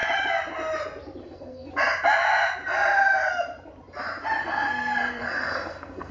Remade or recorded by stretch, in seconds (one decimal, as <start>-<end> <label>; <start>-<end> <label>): 0.0-1.2 recorded; 1.2-1.7 remade; 1.7-4.4 recorded; 4.4-6.1 remade